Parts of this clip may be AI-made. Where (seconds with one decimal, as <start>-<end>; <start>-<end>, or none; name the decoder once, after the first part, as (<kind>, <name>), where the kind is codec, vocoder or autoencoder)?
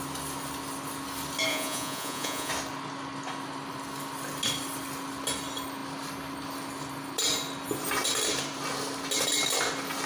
1.5-2.5 (vocoder, Vocos)